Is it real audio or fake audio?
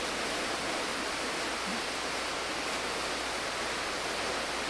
real